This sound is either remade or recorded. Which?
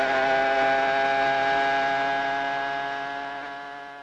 recorded